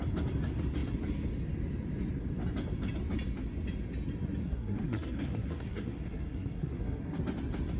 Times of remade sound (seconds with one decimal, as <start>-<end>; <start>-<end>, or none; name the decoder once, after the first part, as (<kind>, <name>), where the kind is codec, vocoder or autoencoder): 4.4-7.2 (codec, SNAC)